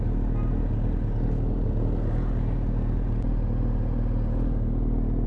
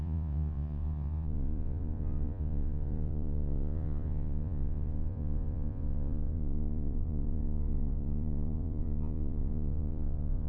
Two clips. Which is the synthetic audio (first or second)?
second